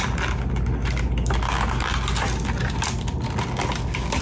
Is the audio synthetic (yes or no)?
no